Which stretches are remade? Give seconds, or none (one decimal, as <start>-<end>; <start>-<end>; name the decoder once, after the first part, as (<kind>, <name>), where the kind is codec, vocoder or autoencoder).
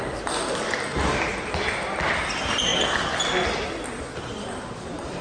none